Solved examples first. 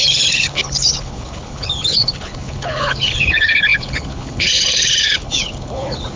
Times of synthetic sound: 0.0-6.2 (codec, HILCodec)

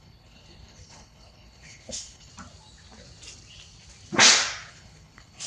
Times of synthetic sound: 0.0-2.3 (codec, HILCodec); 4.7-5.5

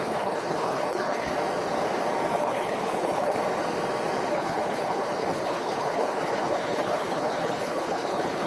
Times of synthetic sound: 0.0-1.3 (codec, HILCodec); 2.4-3.4; 4.3-8.5

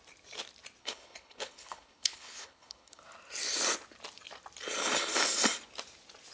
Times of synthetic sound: 0.8-3.0 (codec, HILCodec)